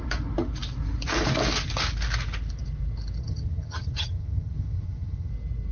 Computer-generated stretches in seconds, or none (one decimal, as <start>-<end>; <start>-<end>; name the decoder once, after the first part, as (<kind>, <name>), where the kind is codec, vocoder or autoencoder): 3.2-5.3 (vocoder, HiFi-GAN)